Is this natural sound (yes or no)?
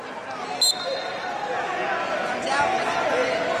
yes